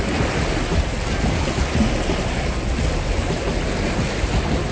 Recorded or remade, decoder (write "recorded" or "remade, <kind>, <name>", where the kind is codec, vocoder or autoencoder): recorded